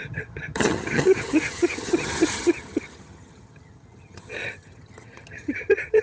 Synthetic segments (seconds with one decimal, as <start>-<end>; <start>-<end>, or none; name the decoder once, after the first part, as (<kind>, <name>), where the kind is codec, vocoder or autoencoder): 0.0-6.0 (vocoder, HiFi-GAN)